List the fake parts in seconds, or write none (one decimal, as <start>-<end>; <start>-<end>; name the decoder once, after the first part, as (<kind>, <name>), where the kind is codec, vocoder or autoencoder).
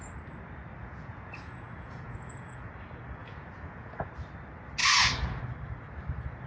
0.8-2.7 (vocoder, Vocos); 3.2-4.1; 4.8-5.4